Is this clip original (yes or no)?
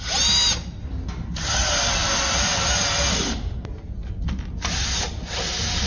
yes